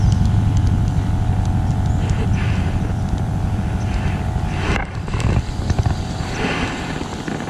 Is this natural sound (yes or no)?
yes